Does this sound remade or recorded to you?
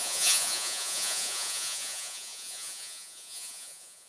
remade